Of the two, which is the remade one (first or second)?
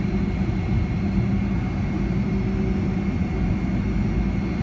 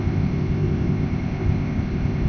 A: second